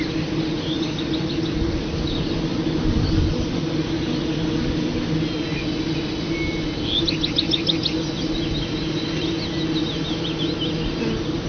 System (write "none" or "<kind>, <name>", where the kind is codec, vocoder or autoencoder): none